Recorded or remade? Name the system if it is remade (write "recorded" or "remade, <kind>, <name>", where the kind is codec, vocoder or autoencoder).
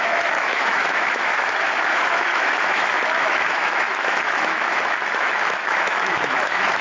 remade, autoencoder, DAC-VAE